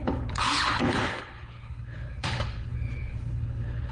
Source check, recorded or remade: remade